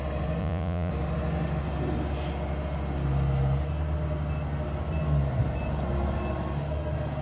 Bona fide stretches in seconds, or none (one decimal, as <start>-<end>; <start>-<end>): 0.0-0.4; 0.9-7.2